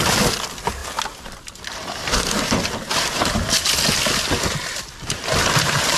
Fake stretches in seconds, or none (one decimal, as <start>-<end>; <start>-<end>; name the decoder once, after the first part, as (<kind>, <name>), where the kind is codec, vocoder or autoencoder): none